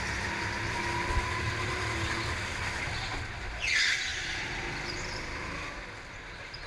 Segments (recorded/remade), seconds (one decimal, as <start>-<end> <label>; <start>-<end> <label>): 0.0-6.7 recorded